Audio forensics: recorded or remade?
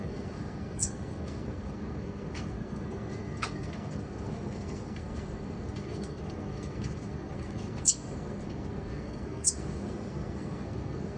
remade